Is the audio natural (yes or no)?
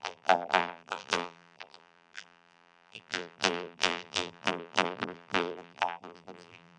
no